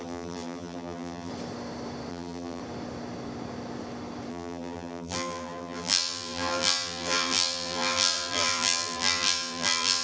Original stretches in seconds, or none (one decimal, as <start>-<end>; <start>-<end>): 1.3-2.1; 2.6-4.3